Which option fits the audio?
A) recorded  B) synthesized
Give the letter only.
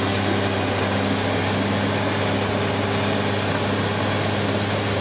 A